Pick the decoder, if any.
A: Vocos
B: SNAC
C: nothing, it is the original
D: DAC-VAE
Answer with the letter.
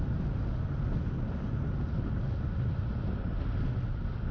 C